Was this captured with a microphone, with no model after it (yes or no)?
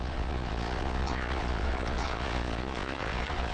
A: no